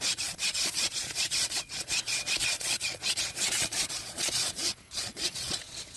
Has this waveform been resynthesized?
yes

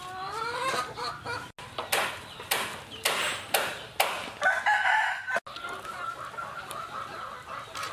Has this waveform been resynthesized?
no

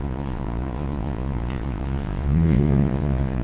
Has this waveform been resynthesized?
yes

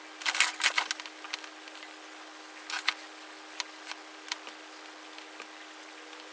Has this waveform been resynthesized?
no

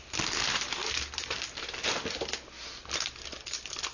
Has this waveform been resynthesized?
no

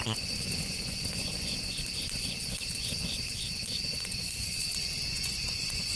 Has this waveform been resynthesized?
yes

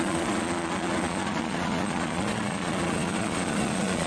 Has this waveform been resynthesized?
yes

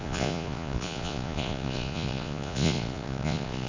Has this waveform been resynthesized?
yes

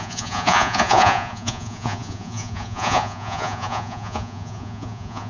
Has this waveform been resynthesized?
yes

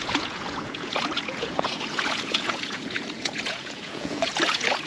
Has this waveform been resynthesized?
yes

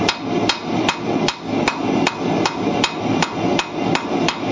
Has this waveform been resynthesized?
no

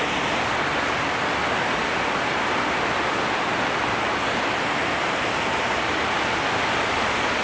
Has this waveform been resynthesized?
no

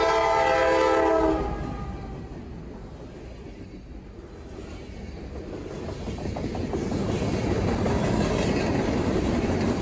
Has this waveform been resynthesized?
no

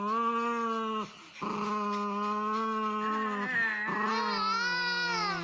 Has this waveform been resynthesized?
no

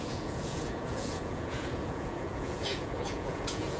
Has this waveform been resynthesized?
yes